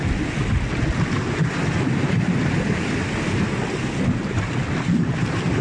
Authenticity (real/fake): real